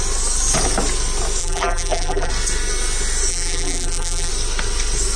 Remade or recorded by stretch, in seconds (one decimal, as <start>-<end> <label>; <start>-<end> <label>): 0.0-1.4 recorded; 1.4-2.3 remade; 2.3-3.3 recorded; 3.3-4.3 remade; 4.3-5.2 recorded